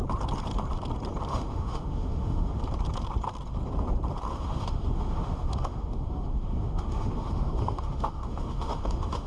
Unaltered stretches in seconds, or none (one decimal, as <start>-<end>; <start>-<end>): 0.0-1.3; 2.6-4.3